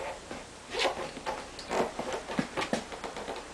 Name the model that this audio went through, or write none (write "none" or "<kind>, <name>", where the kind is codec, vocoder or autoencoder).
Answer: none